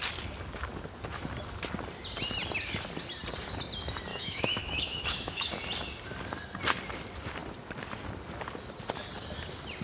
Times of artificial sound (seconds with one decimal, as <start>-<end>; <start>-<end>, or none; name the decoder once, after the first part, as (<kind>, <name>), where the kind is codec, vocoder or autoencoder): 4.1-5.5 (autoencoder, DAC-VAE)